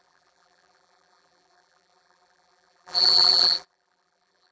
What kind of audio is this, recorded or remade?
remade